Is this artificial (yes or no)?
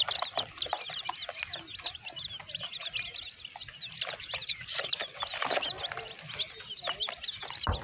no